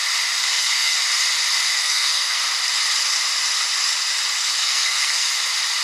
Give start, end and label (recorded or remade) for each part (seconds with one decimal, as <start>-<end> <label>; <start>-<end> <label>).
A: 0.0-0.4 recorded; 0.4-1.0 remade; 1.0-1.7 recorded; 1.7-2.4 remade; 2.4-4.4 recorded; 4.4-5.3 remade; 5.3-5.8 recorded